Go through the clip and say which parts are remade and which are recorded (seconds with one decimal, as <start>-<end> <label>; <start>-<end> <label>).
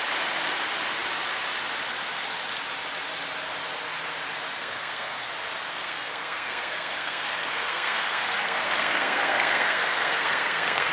0.0-4.6 recorded; 4.6-5.3 remade; 5.3-5.7 recorded; 5.7-10.9 remade